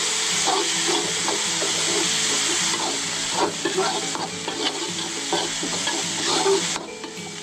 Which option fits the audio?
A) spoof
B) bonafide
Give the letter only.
B